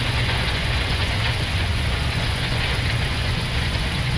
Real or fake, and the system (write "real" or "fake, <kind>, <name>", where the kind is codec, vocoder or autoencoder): fake, vocoder, Vocos